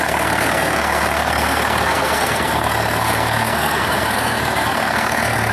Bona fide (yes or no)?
no